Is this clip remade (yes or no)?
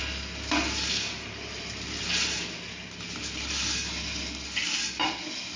no